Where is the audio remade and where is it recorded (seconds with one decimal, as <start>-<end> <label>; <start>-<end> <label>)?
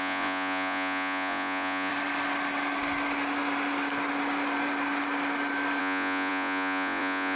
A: 0.0-1.9 remade; 1.9-5.8 recorded; 5.8-7.4 remade